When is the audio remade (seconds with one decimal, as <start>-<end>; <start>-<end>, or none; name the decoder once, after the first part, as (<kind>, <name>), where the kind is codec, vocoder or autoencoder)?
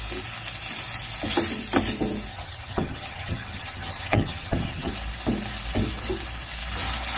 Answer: 2.3-4.9 (vocoder, HiFi-GAN)